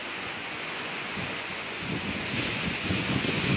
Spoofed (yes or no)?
yes